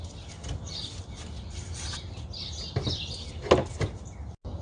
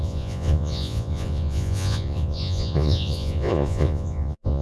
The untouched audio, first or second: first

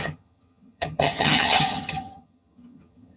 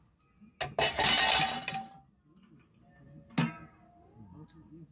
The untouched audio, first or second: second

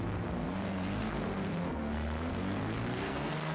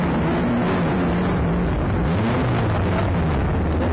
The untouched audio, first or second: second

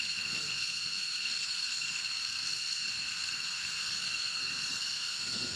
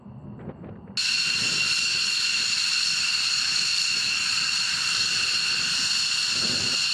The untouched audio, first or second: second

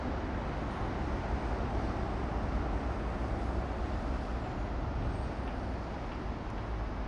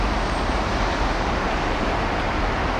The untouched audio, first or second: first